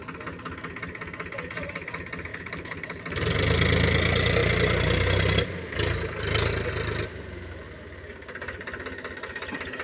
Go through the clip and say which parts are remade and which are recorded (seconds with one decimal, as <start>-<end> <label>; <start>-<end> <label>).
0.0-2.3 recorded; 2.3-3.0 remade; 3.0-9.8 recorded